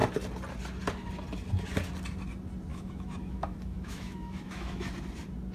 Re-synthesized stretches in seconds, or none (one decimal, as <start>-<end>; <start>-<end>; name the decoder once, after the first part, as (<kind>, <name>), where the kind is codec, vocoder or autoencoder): 2.7-4.9 (autoencoder, DAC-VAE)